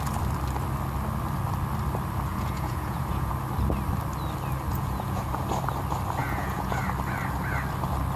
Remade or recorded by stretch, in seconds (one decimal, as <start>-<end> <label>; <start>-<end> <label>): 0.0-2.3 recorded; 2.3-3.3 remade; 3.3-4.7 recorded; 4.7-5.4 remade; 5.4-6.2 recorded; 6.2-6.8 remade; 6.8-8.2 recorded